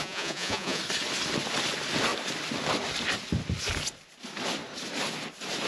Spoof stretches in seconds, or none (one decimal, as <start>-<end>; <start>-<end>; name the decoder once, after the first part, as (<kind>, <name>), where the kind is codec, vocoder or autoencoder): 0.0-0.8 (vocoder, Vocos)